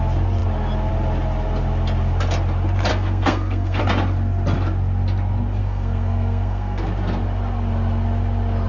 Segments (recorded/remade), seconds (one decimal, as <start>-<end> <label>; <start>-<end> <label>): 0.0-2.9 recorded; 2.9-3.8 remade; 3.8-5.6 recorded; 5.6-6.8 remade; 6.8-8.7 recorded